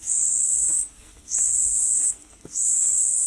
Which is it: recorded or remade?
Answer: remade